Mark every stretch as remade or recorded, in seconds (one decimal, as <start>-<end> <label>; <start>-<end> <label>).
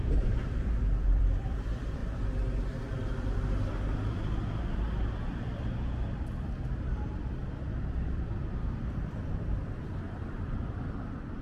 0.0-2.0 remade; 2.0-4.1 recorded; 4.1-11.4 remade